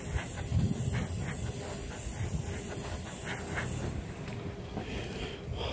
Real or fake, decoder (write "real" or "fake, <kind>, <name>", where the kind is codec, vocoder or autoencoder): real